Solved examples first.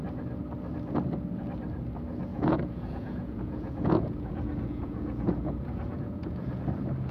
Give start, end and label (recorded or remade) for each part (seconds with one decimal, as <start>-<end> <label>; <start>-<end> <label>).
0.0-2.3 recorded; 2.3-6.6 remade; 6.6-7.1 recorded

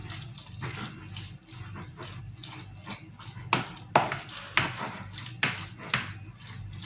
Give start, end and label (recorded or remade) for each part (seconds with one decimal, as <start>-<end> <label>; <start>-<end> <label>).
0.0-6.9 recorded

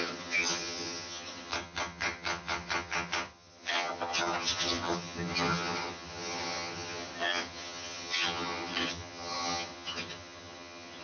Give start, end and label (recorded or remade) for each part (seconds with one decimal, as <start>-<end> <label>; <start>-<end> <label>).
0.0-11.0 remade

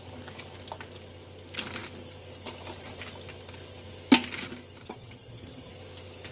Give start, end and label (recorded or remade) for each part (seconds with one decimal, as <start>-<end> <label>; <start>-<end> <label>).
0.0-4.8 recorded; 4.8-5.7 remade; 5.7-6.3 recorded